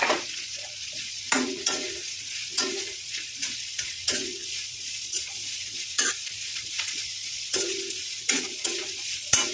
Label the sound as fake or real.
fake